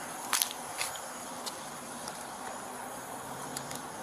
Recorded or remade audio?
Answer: recorded